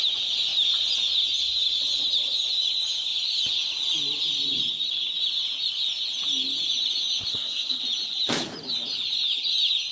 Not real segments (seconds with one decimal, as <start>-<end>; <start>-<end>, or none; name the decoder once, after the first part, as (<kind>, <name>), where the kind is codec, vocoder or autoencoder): 7.3-7.8 (codec, SNAC)